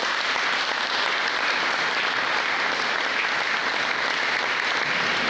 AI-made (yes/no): no